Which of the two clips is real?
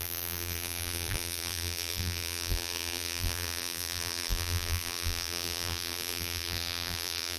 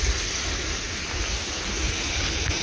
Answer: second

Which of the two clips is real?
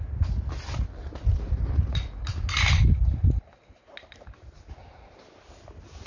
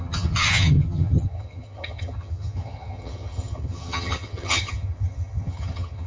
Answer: first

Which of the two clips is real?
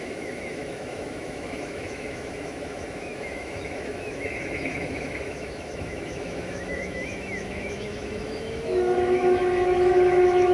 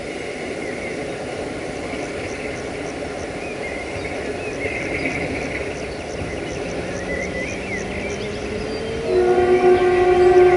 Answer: second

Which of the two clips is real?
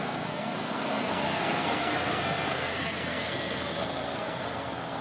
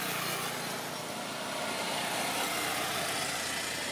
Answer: second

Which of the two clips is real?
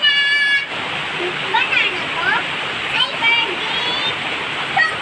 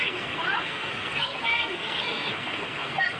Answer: first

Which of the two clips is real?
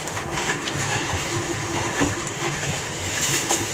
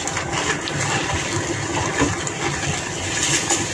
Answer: second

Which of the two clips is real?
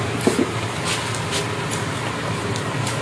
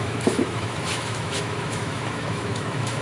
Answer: first